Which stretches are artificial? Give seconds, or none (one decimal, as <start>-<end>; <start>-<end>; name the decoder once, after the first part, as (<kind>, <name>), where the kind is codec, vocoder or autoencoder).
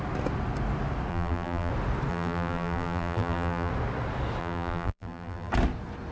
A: 1.1-1.7 (vocoder, BigVGAN v2); 2.1-3.7; 4.4-5.5